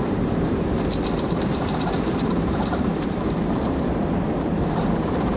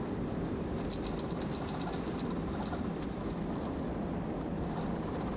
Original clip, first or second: second